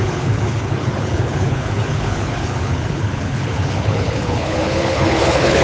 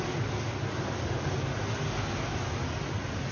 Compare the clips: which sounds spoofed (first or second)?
first